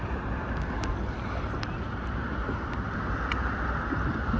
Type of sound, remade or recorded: recorded